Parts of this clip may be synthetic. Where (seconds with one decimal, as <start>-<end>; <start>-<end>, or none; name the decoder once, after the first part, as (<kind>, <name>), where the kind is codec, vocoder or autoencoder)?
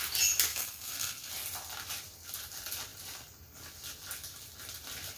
0.5-1.3 (codec, SNAC)